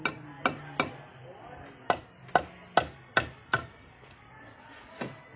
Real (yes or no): yes